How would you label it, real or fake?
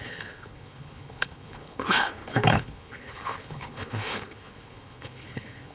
fake